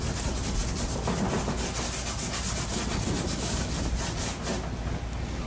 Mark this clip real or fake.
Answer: real